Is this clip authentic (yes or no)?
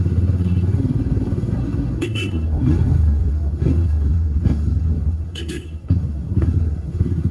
no